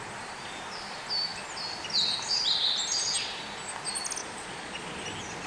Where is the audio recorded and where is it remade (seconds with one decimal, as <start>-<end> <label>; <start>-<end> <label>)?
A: 0.0-4.2 recorded; 4.2-4.9 remade; 4.9-5.5 recorded